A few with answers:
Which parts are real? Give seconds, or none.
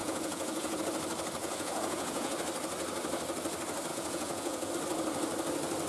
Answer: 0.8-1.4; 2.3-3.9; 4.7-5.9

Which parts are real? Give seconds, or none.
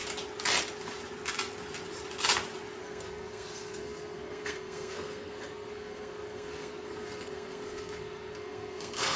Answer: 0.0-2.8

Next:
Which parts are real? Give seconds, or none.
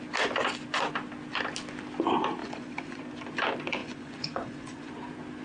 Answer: 0.0-2.4; 3.0-3.8; 4.9-5.4